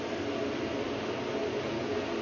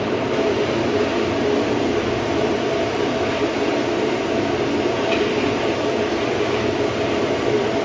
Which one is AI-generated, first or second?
second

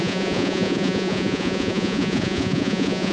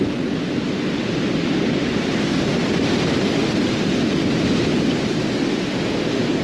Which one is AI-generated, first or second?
first